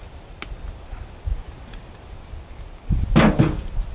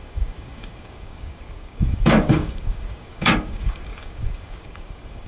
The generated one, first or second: second